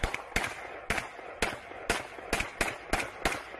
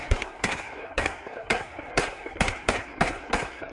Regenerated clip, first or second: second